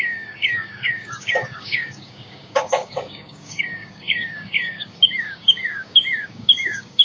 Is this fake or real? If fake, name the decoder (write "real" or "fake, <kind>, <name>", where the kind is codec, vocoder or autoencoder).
fake, codec, DAC